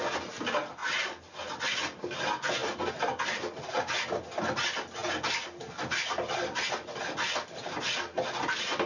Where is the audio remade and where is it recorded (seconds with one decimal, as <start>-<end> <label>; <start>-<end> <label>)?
0.0-8.9 recorded